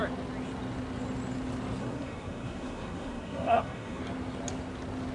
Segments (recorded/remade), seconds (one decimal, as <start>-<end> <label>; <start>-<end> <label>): 0.0-1.8 recorded; 1.8-4.0 remade; 4.0-5.1 recorded